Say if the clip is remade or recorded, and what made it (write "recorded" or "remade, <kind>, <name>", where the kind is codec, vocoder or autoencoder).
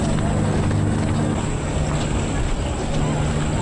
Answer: recorded